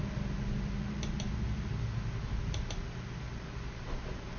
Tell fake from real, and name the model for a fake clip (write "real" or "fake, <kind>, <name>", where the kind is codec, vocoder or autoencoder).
real